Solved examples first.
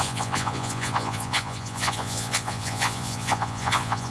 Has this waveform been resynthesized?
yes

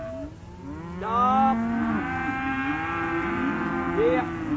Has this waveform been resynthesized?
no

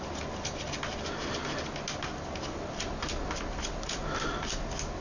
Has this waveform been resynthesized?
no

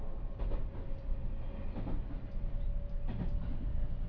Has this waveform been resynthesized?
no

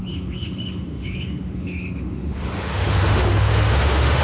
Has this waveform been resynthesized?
yes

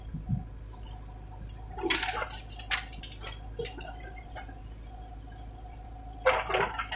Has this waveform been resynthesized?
no